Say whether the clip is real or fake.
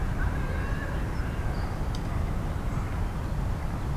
real